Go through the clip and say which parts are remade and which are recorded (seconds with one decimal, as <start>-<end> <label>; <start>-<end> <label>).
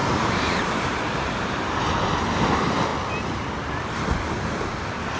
0.0-1.8 remade; 1.8-5.2 recorded